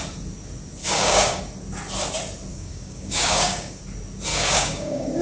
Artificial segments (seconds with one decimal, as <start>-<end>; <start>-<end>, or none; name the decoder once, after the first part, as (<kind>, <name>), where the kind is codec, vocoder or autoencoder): 0.8-1.4 (codec, DAC); 2.5-3.8; 4.3-5.2